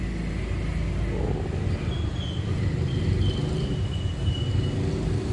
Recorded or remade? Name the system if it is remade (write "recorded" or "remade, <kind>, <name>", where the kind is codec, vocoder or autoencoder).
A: recorded